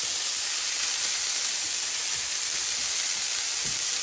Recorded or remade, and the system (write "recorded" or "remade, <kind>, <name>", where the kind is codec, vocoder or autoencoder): recorded